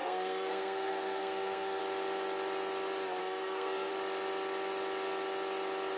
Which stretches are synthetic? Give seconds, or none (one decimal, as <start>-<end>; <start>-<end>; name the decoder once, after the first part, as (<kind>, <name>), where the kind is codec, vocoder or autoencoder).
0.0-1.8 (codec, SNAC); 3.2-3.9